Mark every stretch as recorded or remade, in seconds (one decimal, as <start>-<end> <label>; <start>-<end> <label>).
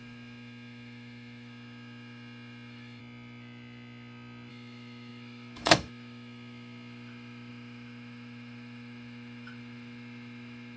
0.0-3.0 remade; 3.0-4.5 recorded; 4.5-10.8 remade